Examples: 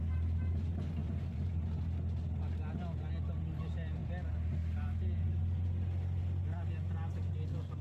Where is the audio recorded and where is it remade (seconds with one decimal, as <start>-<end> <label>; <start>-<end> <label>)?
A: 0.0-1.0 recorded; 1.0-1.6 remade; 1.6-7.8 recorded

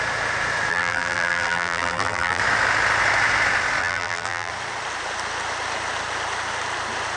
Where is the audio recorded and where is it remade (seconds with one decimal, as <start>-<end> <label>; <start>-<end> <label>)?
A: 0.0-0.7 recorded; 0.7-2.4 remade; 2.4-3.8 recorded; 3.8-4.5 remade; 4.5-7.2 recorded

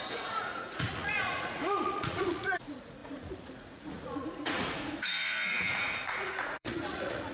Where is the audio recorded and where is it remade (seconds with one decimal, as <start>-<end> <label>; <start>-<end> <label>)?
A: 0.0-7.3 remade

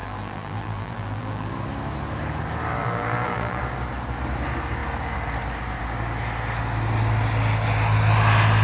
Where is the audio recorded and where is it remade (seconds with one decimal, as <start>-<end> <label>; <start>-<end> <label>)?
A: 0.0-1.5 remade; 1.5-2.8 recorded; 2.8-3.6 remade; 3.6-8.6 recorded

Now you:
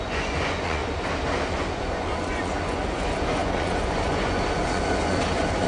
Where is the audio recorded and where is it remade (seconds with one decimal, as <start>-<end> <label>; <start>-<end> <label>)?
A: 0.0-0.8 remade; 0.8-1.5 recorded; 1.5-5.7 remade

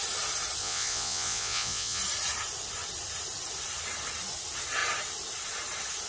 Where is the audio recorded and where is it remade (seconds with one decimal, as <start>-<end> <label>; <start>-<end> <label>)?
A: 0.0-0.6 recorded; 0.6-2.0 remade; 2.0-6.1 recorded